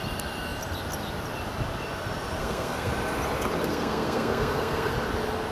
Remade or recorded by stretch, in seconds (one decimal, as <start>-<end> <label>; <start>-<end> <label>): 0.0-2.4 recorded; 2.4-2.9 remade; 2.9-3.7 recorded; 3.7-4.9 remade; 4.9-5.5 recorded